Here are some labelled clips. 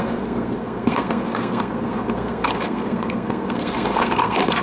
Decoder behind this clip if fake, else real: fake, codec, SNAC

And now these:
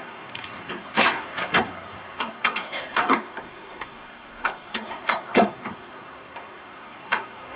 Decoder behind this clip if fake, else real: fake, codec, SNAC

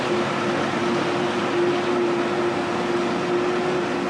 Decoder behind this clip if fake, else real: real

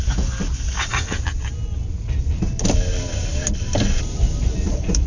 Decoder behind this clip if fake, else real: real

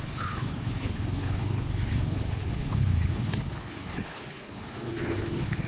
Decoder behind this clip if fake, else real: fake, codec, HILCodec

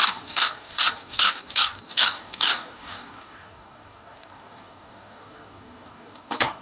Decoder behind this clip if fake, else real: fake, codec, DAC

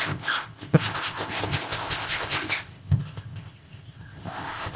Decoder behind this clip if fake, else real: fake, codec, ZipCodec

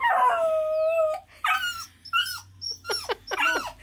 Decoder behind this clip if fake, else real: real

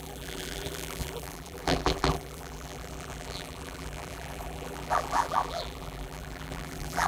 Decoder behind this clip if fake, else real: fake, vocoder, BigVGAN v2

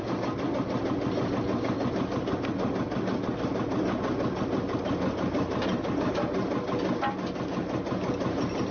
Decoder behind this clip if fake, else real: real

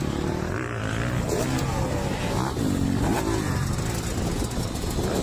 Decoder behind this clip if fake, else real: real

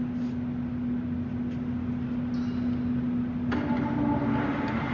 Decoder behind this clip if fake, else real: real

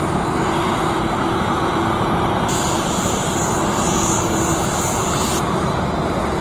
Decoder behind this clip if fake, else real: real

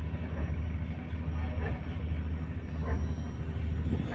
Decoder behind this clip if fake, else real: real